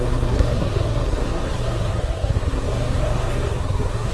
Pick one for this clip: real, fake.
fake